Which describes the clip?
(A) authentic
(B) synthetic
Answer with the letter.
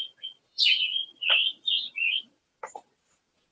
B